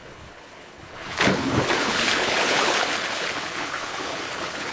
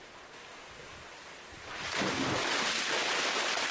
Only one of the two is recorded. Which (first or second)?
second